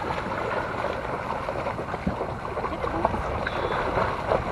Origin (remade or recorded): recorded